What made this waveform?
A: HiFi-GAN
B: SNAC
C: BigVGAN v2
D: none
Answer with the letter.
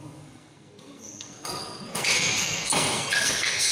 B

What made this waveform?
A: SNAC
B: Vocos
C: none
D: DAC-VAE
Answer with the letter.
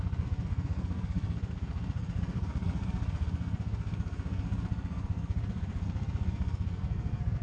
A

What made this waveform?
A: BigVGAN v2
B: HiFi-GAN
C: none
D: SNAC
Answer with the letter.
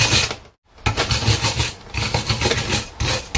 C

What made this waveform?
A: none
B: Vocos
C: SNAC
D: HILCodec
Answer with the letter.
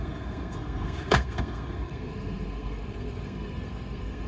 C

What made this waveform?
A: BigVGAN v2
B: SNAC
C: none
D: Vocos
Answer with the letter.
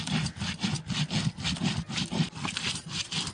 C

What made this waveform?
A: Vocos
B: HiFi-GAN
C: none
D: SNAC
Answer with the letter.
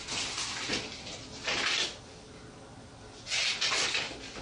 C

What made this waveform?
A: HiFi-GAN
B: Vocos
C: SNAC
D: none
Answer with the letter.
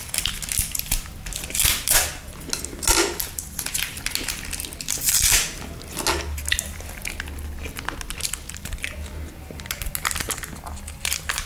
D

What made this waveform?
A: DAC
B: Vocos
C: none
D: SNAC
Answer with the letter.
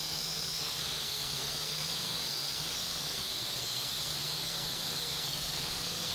D